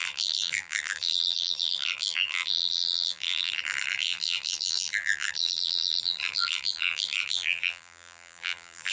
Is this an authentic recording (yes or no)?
no